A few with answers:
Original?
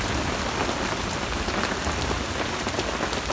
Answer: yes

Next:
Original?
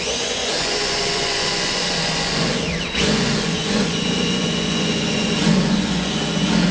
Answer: no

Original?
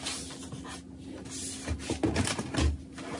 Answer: yes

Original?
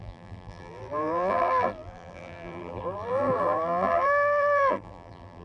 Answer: no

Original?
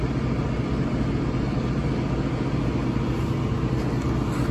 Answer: yes